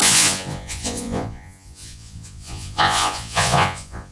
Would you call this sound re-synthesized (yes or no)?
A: yes